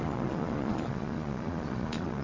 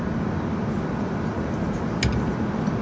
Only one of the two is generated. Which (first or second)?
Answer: first